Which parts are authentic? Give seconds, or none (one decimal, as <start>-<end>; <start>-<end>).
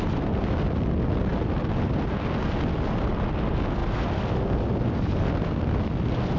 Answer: 0.0-6.4